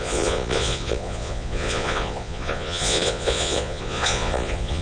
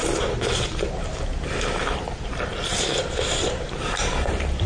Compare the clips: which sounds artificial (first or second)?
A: first